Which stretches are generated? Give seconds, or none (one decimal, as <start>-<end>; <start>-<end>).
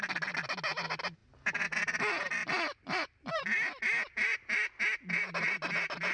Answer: 2.4-3.4; 4.0-4.8